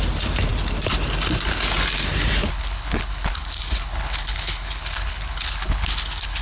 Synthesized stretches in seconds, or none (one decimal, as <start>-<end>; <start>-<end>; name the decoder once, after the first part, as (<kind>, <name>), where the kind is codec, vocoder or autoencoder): 2.5-6.4 (codec, HILCodec)